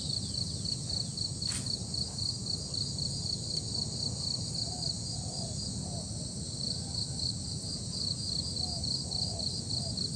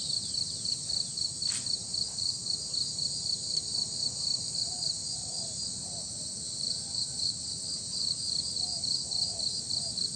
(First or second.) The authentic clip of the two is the first